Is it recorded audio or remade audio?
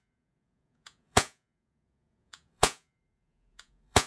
remade